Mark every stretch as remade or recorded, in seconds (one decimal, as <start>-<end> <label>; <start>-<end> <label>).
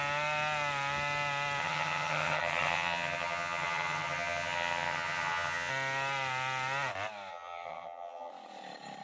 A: 0.0-1.6 recorded; 1.6-5.7 remade; 5.7-7.3 recorded; 7.3-8.3 remade; 8.3-9.0 recorded